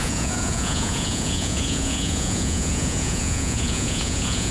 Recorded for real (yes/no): no